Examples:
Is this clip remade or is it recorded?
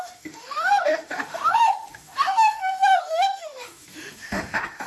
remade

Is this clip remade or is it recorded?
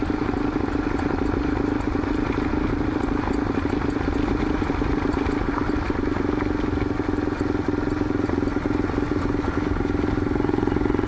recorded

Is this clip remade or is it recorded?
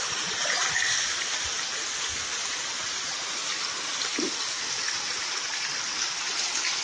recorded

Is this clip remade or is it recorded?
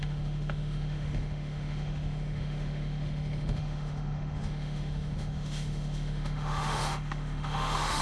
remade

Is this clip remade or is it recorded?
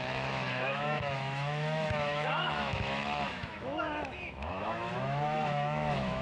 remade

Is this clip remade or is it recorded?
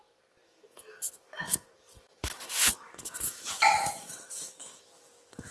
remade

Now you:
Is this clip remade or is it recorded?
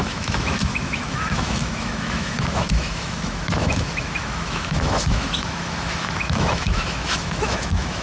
remade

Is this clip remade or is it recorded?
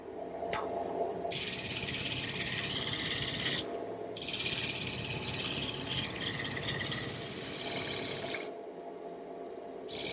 recorded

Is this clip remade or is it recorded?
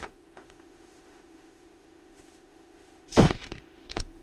remade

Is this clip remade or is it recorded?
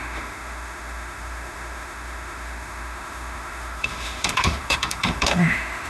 remade